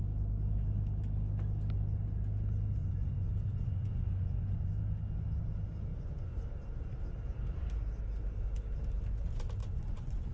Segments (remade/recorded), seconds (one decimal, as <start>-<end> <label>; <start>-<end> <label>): 0.0-2.8 recorded; 2.8-4.7 remade; 4.7-5.9 recorded; 5.9-6.4 remade; 6.4-9.6 recorded; 9.6-10.3 remade